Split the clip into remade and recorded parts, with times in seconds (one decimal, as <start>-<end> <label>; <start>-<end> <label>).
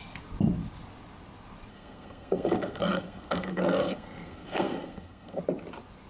0.0-1.7 recorded; 1.7-5.4 remade; 5.4-6.1 recorded